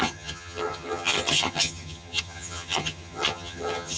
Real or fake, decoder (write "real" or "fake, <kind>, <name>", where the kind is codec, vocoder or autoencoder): fake, vocoder, HiFi-GAN